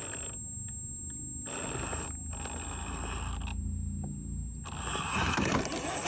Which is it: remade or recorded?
recorded